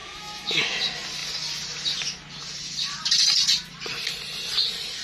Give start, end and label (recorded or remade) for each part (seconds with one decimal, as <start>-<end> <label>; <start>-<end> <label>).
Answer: 0.0-0.7 remade; 0.7-5.0 recorded